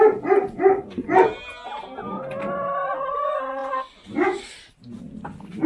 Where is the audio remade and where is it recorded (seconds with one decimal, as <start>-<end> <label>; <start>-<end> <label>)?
0.0-5.7 recorded